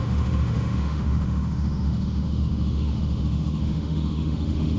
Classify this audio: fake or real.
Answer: fake